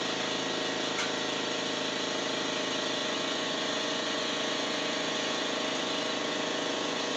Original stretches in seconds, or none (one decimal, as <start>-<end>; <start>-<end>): 0.0-3.0